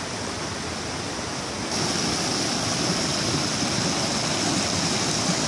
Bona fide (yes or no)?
yes